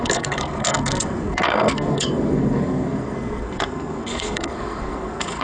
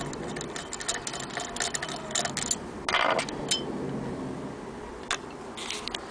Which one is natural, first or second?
second